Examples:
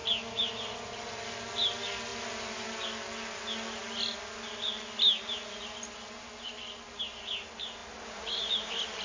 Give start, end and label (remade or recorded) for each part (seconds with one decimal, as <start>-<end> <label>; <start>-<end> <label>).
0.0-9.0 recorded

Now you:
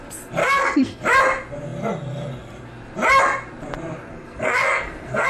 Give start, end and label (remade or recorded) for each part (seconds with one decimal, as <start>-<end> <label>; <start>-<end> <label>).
0.0-0.4 recorded; 0.4-1.0 remade; 1.0-4.1 recorded; 4.1-5.3 remade

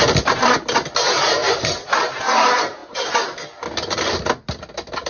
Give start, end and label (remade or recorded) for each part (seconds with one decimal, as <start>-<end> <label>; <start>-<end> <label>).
0.0-2.8 remade; 2.8-5.1 recorded